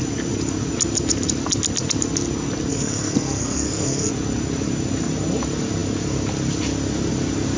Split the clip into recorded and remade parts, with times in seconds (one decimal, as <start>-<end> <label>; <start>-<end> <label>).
0.0-2.7 recorded; 2.7-4.1 remade; 4.1-7.6 recorded